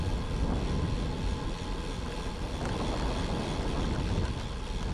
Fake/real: real